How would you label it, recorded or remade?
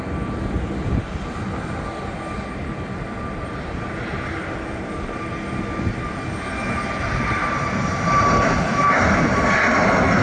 recorded